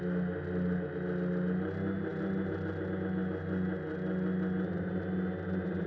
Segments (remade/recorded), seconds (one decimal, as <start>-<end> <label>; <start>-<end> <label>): 0.0-5.9 recorded